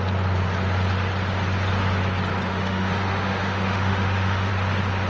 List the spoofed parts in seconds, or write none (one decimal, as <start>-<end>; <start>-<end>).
2.5-4.5